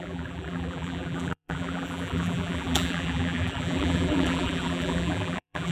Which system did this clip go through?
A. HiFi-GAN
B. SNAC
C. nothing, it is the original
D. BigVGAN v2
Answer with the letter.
D